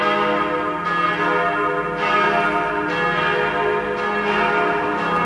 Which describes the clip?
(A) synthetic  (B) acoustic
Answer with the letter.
B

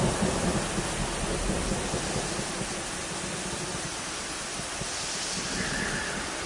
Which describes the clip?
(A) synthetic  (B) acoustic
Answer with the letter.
B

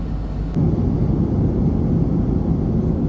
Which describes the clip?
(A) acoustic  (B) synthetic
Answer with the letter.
A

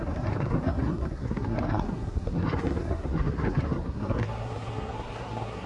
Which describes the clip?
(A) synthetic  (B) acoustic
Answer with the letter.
A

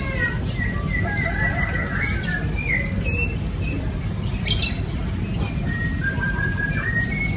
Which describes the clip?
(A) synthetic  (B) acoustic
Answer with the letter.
B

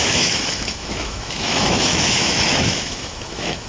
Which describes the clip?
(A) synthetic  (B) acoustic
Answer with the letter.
A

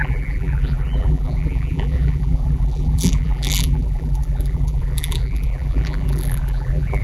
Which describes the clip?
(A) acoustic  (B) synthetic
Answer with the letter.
B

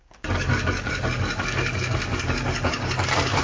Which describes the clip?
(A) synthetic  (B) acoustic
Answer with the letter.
A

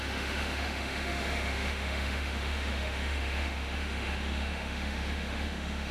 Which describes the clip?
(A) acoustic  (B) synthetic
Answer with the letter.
B